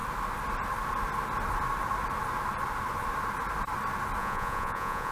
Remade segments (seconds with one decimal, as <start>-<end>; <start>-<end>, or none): 4.2-5.1